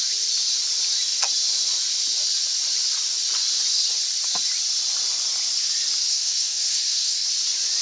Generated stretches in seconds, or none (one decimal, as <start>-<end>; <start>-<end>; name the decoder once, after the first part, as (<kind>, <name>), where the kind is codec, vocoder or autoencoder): 6.1-7.3 (codec, SNAC)

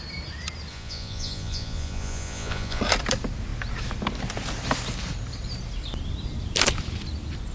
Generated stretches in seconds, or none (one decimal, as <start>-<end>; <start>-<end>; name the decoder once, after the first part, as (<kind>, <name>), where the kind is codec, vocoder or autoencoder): 0.7-2.8 (vocoder, Vocos)

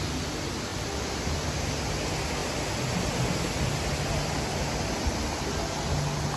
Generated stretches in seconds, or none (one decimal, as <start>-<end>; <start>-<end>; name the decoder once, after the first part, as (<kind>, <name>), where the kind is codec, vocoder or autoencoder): none

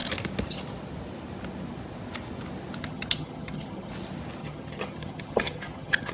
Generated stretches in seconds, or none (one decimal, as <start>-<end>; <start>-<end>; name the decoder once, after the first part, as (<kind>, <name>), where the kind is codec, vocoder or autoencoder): 2.8-3.9 (vocoder, HiFi-GAN); 4.4-6.1

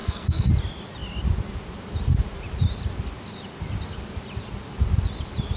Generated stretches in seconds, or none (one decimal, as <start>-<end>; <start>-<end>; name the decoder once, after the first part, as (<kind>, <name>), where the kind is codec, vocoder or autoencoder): 0.0-0.5 (codec, SNAC)